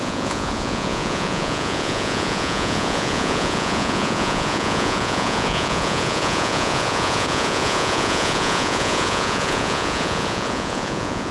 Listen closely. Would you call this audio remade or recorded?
remade